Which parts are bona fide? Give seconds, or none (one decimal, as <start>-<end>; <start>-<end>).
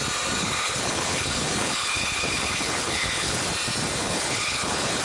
0.0-0.4; 3.4-4.0